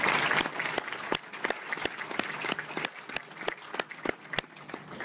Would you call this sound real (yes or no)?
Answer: yes